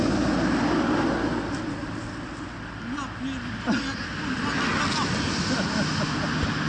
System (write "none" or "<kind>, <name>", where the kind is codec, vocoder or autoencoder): none